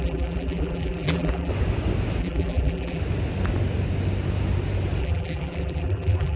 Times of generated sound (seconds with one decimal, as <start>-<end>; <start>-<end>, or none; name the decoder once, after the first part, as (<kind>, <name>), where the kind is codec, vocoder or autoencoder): 0.0-1.5 (vocoder, BigVGAN v2); 2.2-3.0; 5.0-6.4